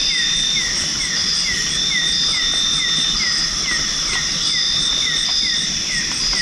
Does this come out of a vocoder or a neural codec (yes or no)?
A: no